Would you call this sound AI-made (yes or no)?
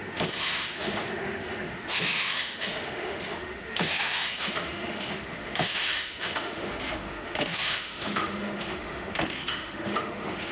yes